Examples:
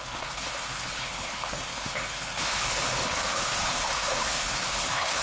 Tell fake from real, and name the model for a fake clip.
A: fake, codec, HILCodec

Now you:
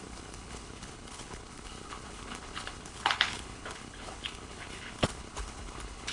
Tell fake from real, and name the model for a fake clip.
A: fake, codec, HILCodec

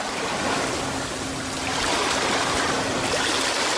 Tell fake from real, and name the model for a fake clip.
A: real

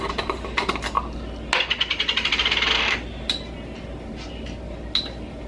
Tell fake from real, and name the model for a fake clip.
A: real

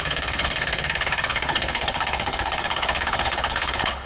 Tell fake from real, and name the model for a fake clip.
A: fake, codec, HILCodec